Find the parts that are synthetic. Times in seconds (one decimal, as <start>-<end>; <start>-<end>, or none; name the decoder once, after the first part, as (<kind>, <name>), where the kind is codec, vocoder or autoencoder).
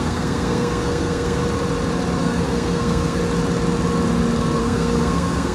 0.0-1.4 (codec, SNAC); 2.2-3.2; 4.6-5.5